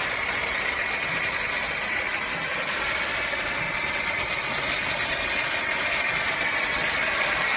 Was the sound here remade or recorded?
recorded